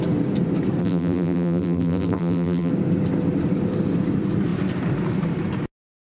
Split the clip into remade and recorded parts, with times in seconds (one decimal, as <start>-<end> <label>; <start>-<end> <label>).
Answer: 0.0-0.8 recorded; 0.8-2.7 remade; 2.7-6.2 recorded